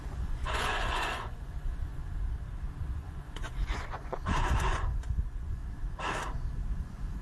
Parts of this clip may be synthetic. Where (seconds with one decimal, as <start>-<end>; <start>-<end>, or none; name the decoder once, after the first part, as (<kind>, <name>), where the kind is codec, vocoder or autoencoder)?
0.0-2.0 (vocoder, Vocos); 2.8-5.6; 6.8-7.2